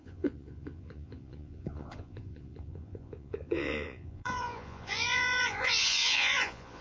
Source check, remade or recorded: remade